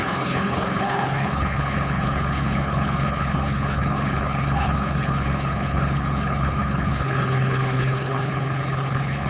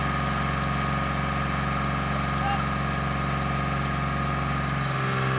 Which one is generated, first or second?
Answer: first